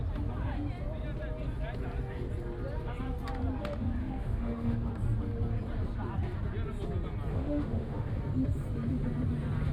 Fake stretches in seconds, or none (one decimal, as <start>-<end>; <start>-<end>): 4.0-4.9; 7.3-8.2